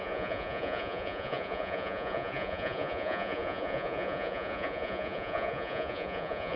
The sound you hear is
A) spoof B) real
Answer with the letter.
A